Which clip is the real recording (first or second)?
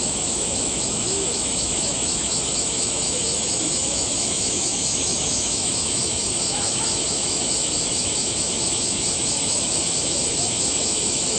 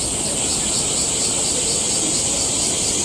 second